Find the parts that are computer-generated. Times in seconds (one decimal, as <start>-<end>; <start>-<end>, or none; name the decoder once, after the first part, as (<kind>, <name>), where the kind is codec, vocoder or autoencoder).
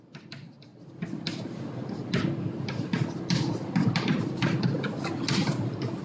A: none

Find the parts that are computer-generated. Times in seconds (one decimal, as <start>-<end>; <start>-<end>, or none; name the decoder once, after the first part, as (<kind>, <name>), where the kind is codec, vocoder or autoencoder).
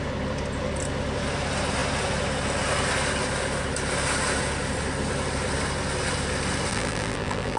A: 6.7-7.6 (vocoder, BigVGAN v2)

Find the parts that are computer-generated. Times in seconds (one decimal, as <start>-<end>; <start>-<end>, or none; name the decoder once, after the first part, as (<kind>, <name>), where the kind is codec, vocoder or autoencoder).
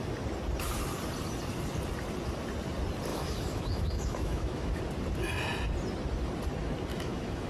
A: 3.1-4.8 (autoencoder, DAC-VAE); 6.9-7.5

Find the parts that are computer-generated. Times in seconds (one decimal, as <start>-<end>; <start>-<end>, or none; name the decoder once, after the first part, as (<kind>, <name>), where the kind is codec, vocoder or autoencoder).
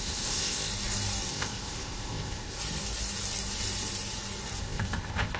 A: 0.0-0.7 (codec, ZipCodec); 1.3-2.6; 4.6-5.4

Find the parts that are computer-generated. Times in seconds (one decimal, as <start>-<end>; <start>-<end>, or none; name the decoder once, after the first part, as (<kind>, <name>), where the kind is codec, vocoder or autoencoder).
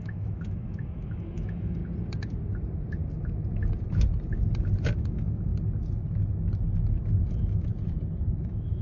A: 0.0-1.8 (autoencoder, DAC-VAE); 4.9-5.5; 7.3-7.7; 8.4-8.8